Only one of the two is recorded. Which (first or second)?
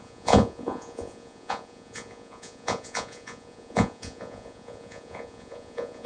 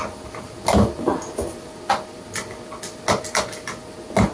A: second